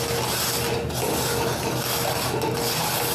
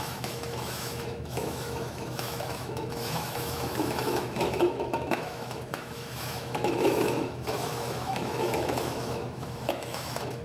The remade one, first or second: second